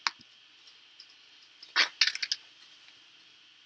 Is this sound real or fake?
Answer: real